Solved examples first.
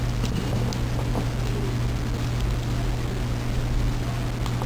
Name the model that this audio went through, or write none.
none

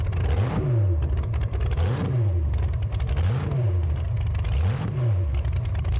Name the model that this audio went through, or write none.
vocoder, BigVGAN v2